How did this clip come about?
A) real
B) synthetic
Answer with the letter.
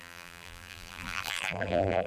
B